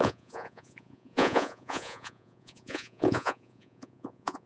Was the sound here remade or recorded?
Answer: remade